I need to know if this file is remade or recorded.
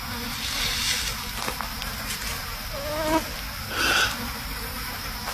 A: recorded